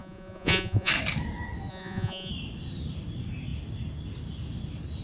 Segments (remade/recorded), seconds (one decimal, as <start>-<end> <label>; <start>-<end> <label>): 0.0-0.9 remade; 0.9-1.7 recorded; 1.7-2.3 remade; 2.3-5.0 recorded